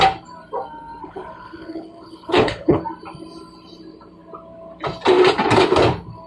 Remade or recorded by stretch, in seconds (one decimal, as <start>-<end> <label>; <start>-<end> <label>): 0.0-1.0 recorded; 1.0-2.8 remade; 2.8-6.3 recorded